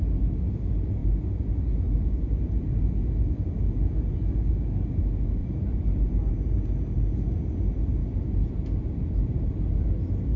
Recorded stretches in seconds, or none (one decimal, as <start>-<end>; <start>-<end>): 0.0-1.0; 2.8-5.4; 6.3-8.0